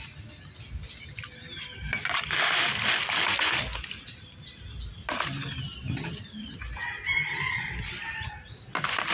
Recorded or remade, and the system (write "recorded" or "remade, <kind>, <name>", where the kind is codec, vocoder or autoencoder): recorded